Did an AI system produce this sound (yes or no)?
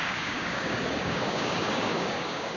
yes